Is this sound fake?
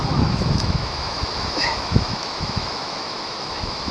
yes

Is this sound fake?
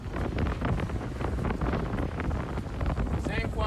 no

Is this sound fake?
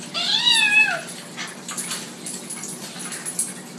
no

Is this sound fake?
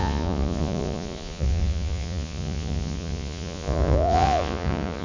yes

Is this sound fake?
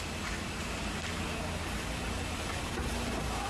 no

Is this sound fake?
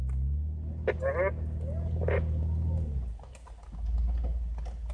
no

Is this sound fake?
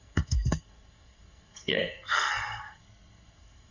yes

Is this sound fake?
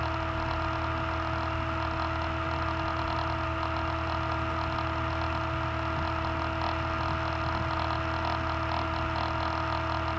no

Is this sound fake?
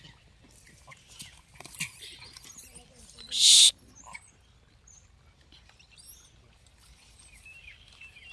no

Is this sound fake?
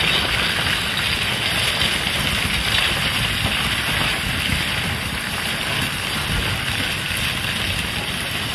no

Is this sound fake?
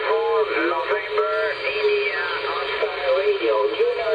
no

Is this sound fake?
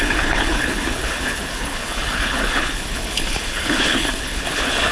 yes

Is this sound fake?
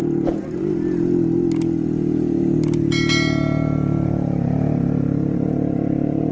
no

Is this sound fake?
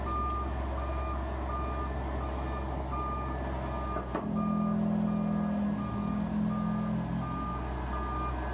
no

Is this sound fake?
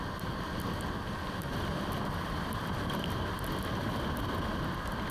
no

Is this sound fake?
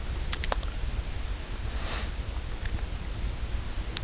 no